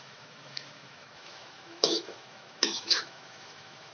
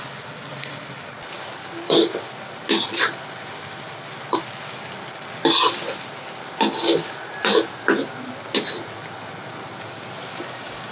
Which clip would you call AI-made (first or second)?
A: first